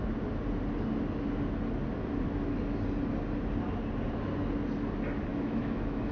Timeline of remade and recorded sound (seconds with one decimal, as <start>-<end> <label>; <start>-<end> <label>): 0.0-5.3 recorded; 5.3-6.1 remade